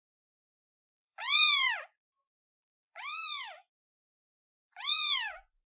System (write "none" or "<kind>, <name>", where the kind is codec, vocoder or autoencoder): vocoder, Vocos